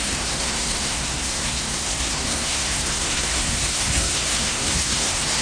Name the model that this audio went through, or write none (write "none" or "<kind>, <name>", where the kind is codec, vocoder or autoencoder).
codec, SNAC